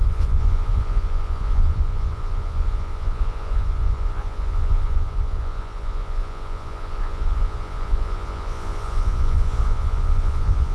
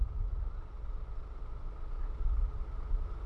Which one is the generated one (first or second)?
first